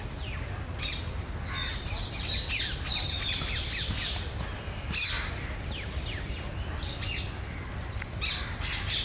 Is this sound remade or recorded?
recorded